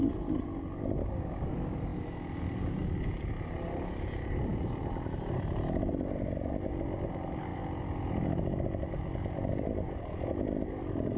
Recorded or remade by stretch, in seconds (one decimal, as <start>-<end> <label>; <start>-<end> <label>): 0.0-1.0 recorded; 1.0-1.5 remade; 1.5-11.2 recorded